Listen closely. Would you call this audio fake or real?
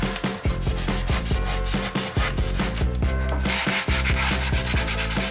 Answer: real